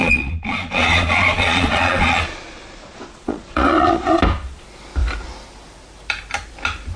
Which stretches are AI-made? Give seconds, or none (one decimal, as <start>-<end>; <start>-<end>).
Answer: 0.0-4.2